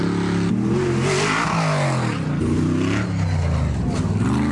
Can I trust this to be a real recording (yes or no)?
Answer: yes